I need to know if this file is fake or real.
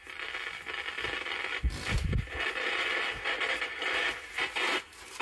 real